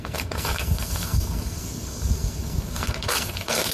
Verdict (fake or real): fake